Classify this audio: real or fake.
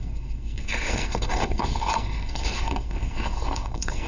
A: fake